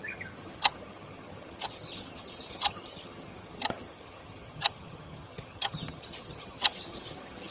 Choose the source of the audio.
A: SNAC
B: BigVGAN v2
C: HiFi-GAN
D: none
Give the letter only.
C